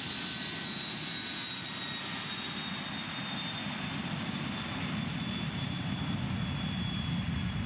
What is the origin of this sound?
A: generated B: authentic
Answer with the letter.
B